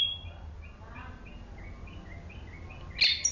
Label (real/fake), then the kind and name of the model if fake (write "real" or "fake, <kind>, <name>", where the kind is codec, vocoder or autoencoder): real